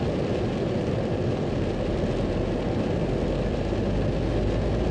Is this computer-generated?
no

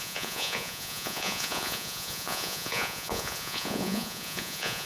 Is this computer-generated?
yes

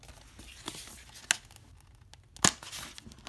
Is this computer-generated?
no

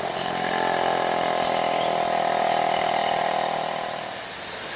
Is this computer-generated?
no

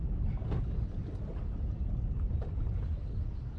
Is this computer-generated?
no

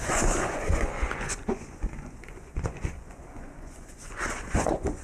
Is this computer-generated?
yes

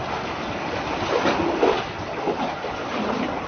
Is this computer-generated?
no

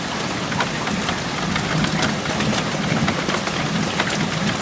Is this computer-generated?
no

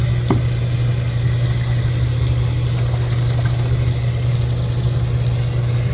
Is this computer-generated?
no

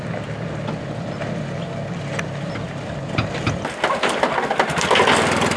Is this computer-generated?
no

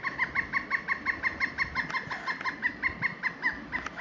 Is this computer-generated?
no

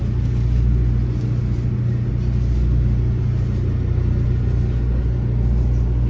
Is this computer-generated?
no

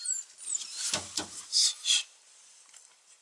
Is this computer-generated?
no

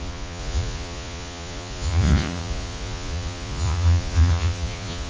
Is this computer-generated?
yes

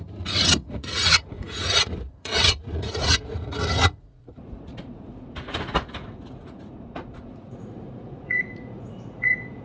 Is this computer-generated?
yes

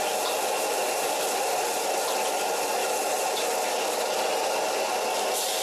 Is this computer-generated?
no